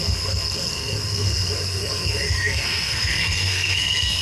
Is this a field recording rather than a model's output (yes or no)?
no